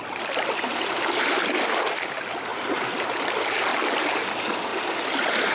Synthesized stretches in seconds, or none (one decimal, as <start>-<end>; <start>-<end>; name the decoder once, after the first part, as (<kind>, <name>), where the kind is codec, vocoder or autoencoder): 2.5-3.3 (vocoder, BigVGAN v2); 3.7-4.3